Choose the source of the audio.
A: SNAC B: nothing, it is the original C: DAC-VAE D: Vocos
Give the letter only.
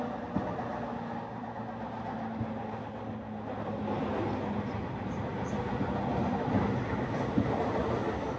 B